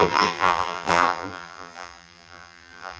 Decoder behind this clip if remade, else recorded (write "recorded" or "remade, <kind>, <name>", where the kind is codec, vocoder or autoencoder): remade, vocoder, BigVGAN v2